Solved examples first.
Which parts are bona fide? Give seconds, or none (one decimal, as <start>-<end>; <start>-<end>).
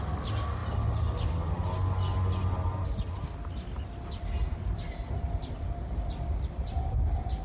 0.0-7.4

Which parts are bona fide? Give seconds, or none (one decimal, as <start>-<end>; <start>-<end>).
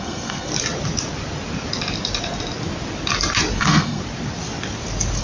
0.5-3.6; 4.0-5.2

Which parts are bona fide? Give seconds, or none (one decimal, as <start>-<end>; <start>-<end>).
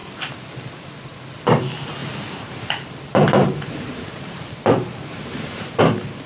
0.0-2.0; 5.8-6.3